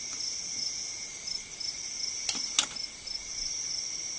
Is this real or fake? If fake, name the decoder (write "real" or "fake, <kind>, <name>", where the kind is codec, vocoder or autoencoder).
real